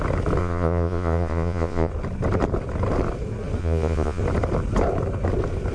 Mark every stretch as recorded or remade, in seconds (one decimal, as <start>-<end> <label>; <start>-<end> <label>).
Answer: 0.0-0.4 recorded; 0.4-1.9 remade; 1.9-3.6 recorded; 3.6-4.2 remade; 4.2-5.7 recorded